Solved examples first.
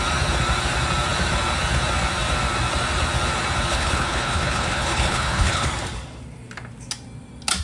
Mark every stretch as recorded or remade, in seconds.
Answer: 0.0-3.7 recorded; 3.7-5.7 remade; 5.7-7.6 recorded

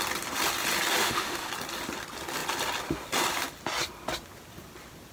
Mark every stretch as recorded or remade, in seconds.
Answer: 0.0-1.0 recorded; 1.0-1.5 remade; 1.5-5.1 recorded

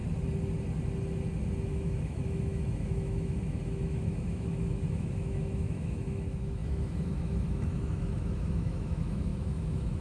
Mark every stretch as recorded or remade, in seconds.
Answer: 0.0-1.7 recorded; 1.7-10.0 remade

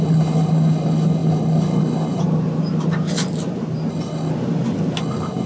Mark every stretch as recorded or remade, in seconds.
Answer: 0.0-2.2 remade; 2.2-3.9 recorded; 3.9-4.3 remade; 4.3-5.0 recorded; 5.0-5.5 remade

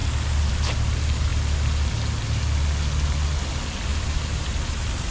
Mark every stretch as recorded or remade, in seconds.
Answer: 0.0-5.1 recorded

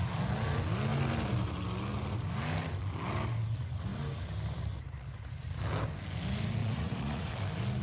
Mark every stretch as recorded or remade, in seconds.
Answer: 0.0-6.6 recorded; 6.6-7.3 remade; 7.3-7.8 recorded

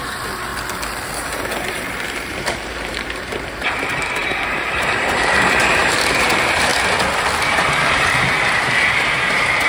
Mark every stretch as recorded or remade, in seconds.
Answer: 0.0-0.5 remade; 0.5-1.2 recorded; 1.2-6.7 remade; 6.7-7.5 recorded; 7.5-9.7 remade